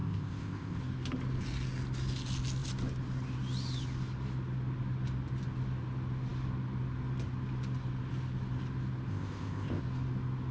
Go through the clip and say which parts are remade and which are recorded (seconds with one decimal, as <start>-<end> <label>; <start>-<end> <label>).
0.0-0.8 remade; 0.8-9.1 recorded; 9.1-9.8 remade; 9.8-10.5 recorded